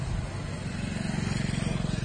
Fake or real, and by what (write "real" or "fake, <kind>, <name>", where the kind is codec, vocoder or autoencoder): real